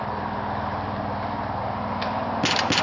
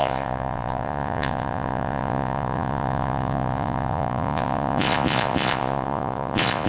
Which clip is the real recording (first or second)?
first